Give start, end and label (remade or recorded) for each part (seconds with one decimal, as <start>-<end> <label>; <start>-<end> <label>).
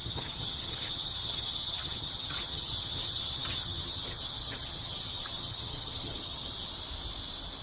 0.0-6.7 remade; 6.7-7.6 recorded